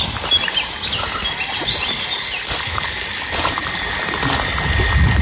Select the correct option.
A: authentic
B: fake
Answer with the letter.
A